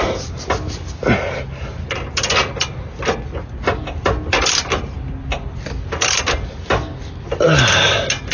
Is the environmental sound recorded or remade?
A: recorded